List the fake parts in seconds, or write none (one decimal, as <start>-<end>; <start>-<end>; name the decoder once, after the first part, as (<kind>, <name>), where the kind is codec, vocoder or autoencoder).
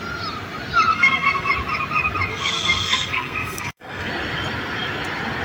0.9-1.5 (codec, SNAC); 2.3-4.1